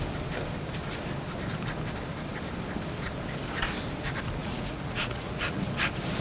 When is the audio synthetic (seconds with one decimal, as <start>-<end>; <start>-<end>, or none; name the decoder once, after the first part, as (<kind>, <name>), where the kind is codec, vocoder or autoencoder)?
4.4-5.7 (vocoder, Vocos)